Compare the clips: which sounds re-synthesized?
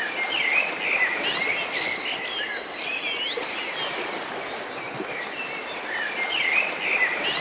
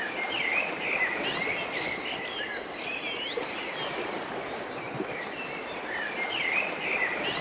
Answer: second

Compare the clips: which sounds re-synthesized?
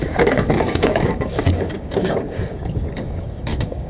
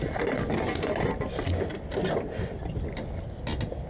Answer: first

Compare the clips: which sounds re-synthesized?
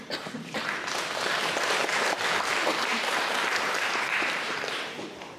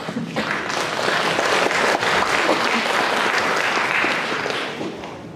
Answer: first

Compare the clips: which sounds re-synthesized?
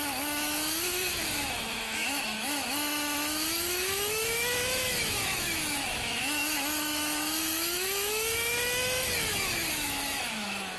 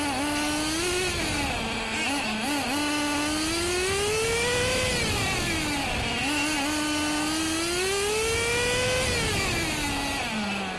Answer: first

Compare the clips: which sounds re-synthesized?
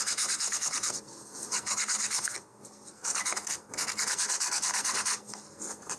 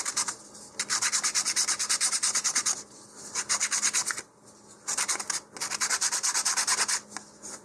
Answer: first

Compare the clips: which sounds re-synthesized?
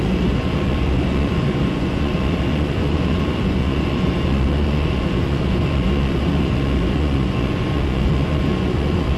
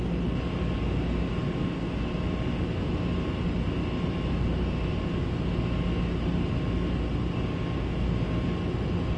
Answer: first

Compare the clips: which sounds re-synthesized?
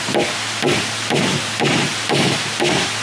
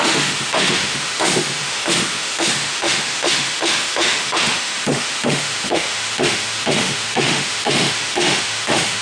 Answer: second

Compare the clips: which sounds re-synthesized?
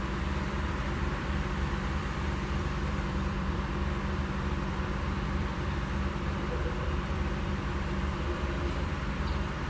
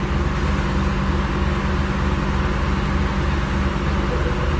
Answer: first